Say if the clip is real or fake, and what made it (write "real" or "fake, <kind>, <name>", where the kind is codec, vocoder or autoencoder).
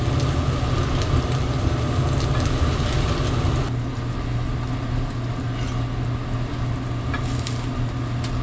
real